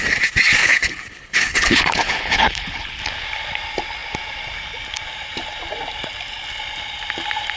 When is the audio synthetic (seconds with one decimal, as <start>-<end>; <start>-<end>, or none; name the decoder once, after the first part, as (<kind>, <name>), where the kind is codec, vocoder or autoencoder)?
0.6-3.0 (codec, HILCodec)